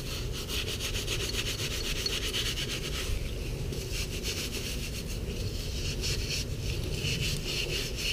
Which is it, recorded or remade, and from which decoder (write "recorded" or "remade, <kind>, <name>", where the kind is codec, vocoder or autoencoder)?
recorded